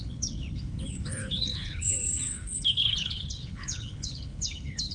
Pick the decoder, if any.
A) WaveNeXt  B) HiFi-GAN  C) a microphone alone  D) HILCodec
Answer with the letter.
D